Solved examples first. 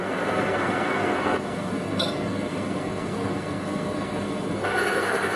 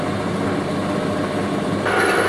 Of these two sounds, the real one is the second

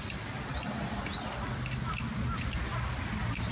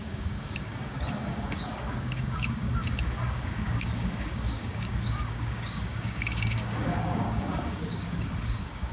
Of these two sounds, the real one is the first